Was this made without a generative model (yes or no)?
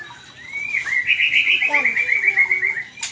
yes